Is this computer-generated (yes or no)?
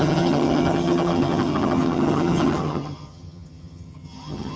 yes